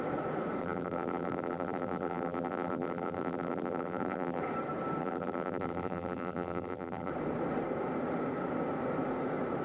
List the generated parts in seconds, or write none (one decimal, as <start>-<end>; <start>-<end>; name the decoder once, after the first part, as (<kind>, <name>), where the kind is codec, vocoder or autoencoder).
0.6-4.4 (vocoder, BigVGAN v2); 5.0-7.1